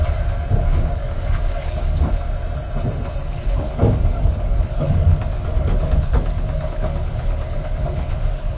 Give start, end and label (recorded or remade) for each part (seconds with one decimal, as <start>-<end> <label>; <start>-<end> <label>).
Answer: 0.0-1.0 recorded; 1.0-2.1 remade; 2.1-3.2 recorded; 3.2-8.6 remade